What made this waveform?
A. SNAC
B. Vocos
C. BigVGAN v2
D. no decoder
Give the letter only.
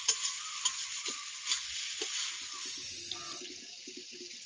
D